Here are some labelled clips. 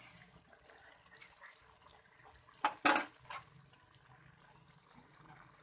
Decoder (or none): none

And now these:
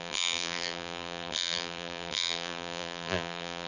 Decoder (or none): vocoder, BigVGAN v2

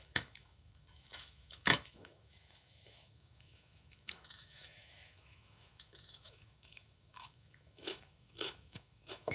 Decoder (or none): autoencoder, DAC-VAE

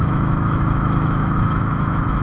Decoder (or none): autoencoder, DAC-VAE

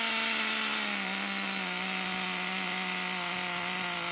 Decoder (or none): none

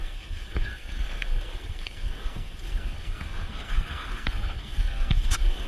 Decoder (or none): codec, SNAC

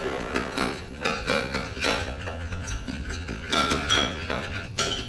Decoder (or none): vocoder, Vocos